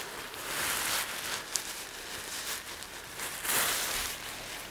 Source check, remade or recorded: recorded